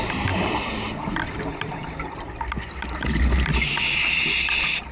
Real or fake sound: real